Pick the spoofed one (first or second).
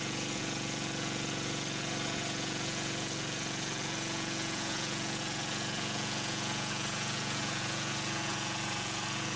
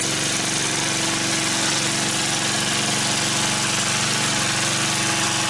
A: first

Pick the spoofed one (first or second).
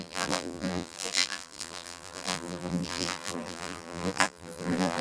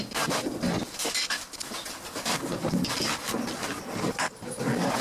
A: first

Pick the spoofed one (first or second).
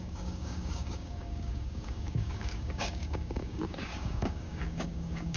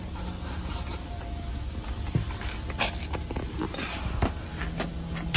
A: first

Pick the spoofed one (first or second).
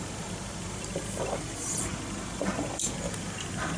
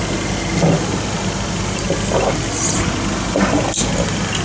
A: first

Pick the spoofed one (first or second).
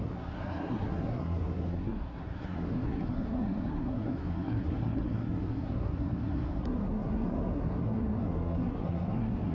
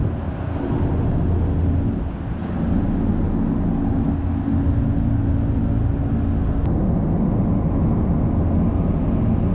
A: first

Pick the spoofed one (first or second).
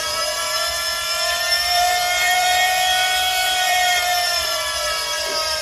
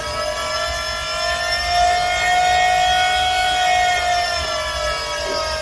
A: first